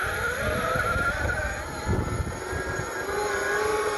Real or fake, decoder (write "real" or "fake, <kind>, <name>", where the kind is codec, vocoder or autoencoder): real